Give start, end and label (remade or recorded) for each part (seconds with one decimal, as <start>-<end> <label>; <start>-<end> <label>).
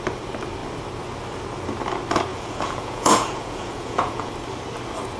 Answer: 0.0-2.3 recorded; 2.3-4.3 remade; 4.3-5.2 recorded